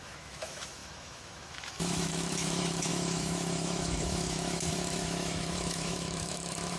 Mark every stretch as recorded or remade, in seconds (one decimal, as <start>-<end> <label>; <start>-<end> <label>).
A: 0.0-6.8 remade